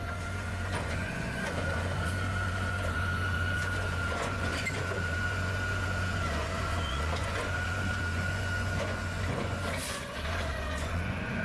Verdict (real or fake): fake